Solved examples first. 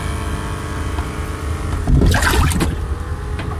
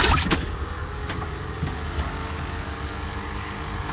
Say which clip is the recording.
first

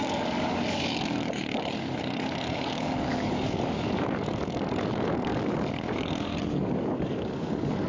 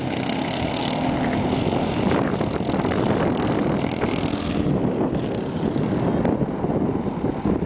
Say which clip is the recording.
second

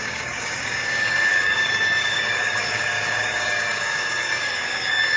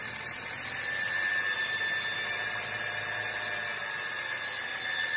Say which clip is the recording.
second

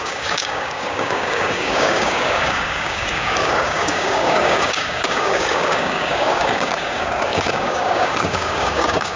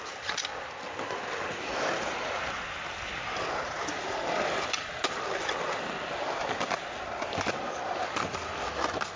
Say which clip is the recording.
second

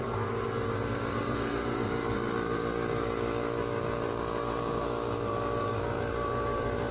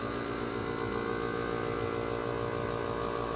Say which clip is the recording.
second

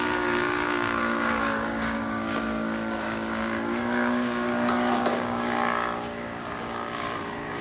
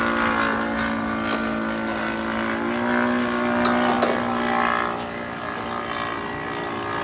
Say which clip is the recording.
second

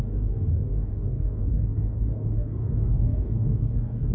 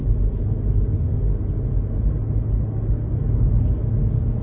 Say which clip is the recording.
second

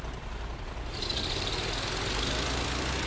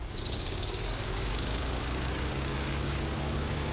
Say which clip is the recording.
first